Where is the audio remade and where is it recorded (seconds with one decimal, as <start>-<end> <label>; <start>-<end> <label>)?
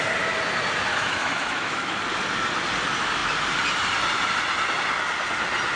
0.0-0.9 recorded; 0.9-1.9 remade; 1.9-5.8 recorded